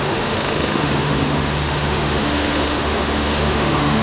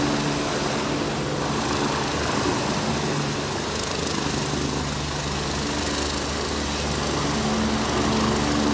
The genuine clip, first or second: second